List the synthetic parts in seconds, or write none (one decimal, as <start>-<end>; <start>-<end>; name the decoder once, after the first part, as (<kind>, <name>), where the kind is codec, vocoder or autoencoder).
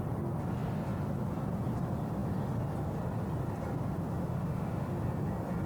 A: 4.2-5.0 (autoencoder, DAC-VAE)